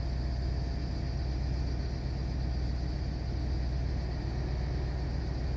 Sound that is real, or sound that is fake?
real